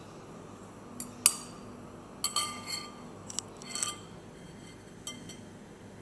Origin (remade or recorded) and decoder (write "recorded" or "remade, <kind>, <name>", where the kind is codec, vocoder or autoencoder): recorded